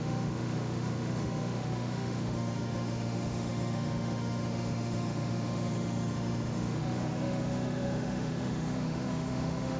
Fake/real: fake